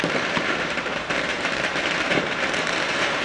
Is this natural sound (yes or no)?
no